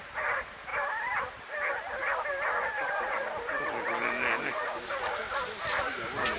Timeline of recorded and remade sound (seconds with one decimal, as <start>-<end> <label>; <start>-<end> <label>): 0.0-6.4 recorded